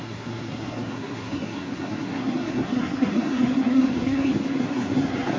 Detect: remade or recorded remade